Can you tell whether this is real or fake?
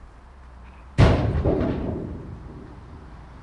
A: fake